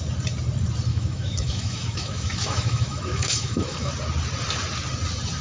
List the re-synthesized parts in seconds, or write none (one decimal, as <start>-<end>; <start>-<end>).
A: 0.9-3.9